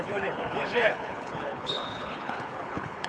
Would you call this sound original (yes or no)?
no